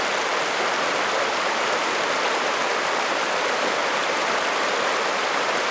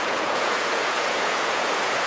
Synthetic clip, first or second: second